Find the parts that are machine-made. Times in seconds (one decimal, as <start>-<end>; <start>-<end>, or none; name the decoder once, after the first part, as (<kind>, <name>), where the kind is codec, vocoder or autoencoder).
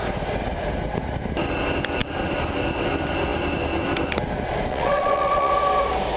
4.7-5.5 (vocoder, WaveNeXt)